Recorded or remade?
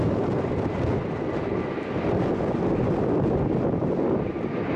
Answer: recorded